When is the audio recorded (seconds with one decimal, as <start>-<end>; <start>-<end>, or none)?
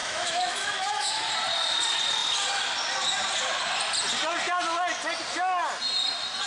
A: 1.1-6.5